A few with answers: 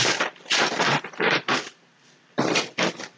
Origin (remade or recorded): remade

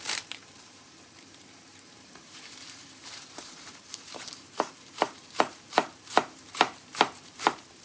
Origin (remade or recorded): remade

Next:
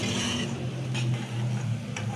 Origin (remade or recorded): recorded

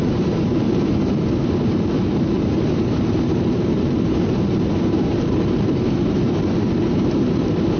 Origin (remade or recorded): remade